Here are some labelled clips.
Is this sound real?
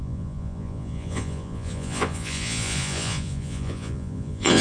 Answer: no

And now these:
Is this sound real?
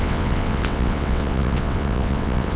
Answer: no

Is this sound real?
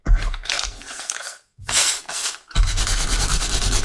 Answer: no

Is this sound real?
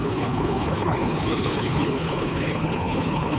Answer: no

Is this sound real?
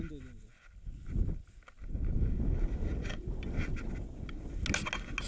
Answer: yes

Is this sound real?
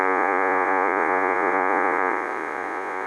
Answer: no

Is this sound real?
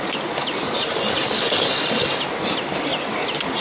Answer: yes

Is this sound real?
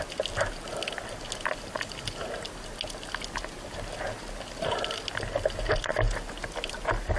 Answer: yes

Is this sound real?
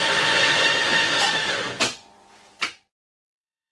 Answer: no